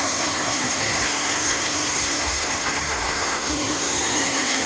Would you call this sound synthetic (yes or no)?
yes